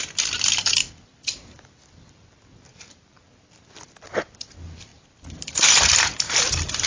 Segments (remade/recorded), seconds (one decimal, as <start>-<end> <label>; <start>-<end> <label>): 0.0-6.9 recorded